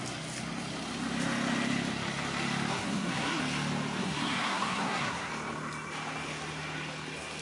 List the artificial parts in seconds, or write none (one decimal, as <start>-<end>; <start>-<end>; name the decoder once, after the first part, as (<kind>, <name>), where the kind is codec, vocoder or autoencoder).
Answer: 2.7-3.4 (codec, SNAC); 4.0-5.3